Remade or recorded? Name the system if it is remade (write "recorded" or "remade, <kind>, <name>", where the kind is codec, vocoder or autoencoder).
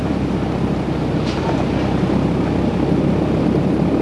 recorded